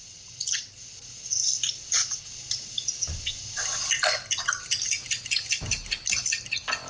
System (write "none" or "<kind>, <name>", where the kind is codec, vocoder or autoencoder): none